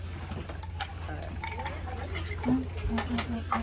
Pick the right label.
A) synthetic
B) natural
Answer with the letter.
B